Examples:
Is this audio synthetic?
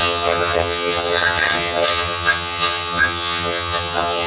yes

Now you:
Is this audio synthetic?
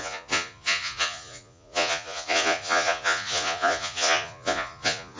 yes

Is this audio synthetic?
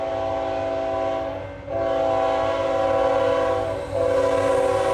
no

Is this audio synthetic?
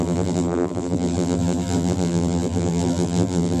yes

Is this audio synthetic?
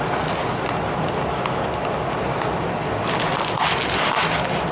no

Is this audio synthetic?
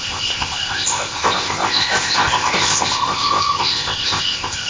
yes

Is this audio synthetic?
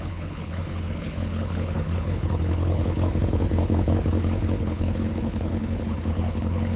yes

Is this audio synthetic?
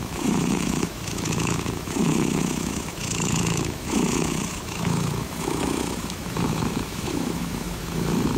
yes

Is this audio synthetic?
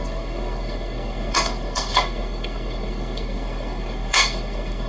yes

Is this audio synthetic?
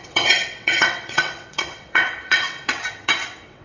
yes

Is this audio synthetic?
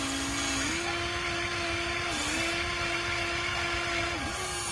no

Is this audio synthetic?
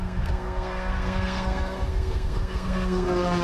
yes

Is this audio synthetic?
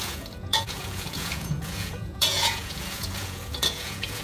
yes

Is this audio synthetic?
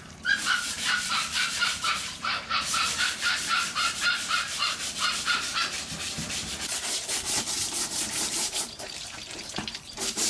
yes